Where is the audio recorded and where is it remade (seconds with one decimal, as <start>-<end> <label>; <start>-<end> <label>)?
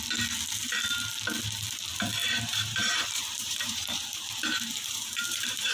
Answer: 0.0-2.2 recorded; 2.2-5.7 remade